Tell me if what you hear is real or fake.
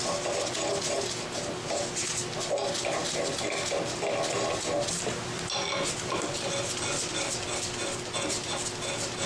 real